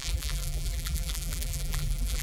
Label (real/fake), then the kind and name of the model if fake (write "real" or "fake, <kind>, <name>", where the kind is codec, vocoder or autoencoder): fake, vocoder, BigVGAN v2